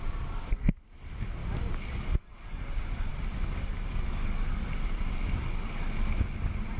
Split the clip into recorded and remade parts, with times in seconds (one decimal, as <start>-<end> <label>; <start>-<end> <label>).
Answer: 0.0-1.4 recorded; 1.4-2.6 remade; 2.6-3.1 recorded; 3.1-5.4 remade; 5.4-6.8 recorded